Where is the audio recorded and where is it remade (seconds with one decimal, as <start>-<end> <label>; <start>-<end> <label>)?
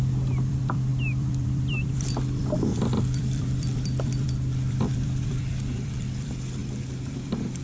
0.0-7.6 remade